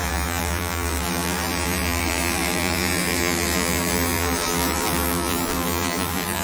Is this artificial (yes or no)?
yes